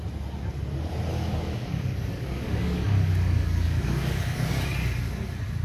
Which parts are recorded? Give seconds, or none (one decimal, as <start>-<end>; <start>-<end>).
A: 0.0-1.1; 4.5-5.6

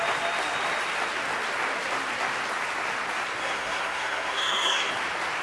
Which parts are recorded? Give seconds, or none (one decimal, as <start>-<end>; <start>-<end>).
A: 0.0-3.4; 4.9-5.4

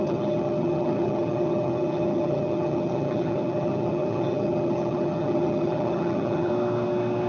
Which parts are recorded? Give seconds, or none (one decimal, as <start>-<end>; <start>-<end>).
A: 6.5-7.3

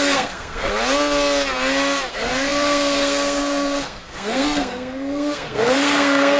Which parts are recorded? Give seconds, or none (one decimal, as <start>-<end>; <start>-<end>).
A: 0.7-2.1

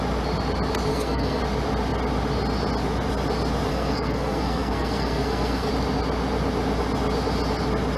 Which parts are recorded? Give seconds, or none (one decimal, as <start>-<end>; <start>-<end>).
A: 0.0-0.9; 1.4-3.7; 5.7-8.0